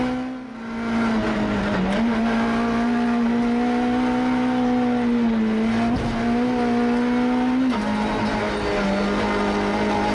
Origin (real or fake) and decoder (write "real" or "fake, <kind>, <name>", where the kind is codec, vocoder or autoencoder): real